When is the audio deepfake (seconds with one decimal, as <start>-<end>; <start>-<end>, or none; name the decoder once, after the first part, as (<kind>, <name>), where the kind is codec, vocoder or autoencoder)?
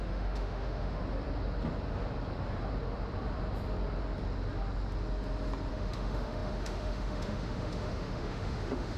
0.0-1.0 (autoencoder, DAC-VAE); 5.7-9.0